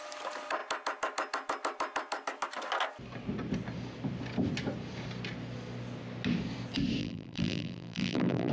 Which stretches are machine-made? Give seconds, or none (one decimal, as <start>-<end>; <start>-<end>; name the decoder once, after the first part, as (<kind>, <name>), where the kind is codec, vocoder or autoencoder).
7.0-8.5 (vocoder, BigVGAN v2)